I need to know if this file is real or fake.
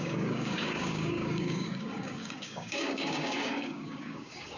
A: fake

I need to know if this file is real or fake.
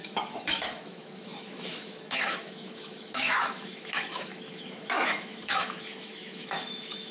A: fake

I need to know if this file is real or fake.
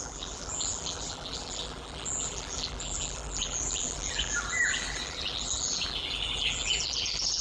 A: fake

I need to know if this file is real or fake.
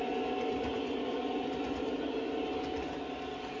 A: real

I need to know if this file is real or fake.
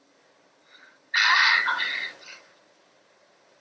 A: real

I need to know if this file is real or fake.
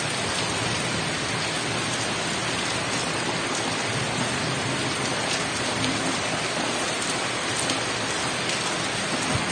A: real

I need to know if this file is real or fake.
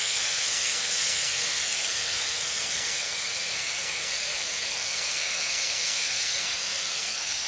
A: fake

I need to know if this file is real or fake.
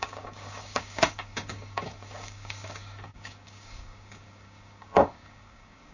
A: fake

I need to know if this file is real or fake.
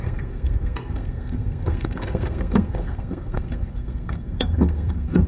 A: fake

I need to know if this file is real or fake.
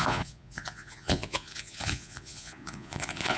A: fake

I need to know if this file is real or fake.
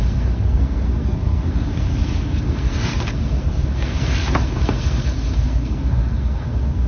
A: fake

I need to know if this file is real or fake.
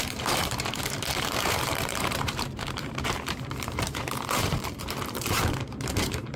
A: fake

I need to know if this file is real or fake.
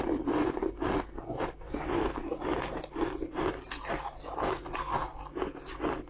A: real